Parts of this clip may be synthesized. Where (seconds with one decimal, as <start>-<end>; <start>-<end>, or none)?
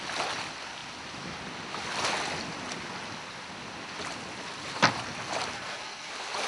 5.5-6.1